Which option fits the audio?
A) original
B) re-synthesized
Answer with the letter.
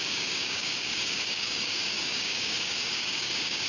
B